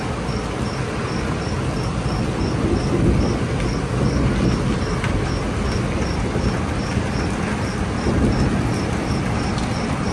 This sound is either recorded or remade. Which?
recorded